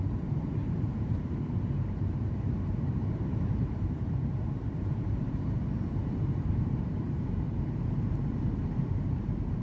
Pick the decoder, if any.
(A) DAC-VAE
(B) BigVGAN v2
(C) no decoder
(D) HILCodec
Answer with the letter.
B